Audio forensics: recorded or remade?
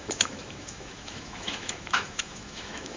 remade